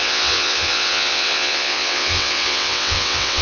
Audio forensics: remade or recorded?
remade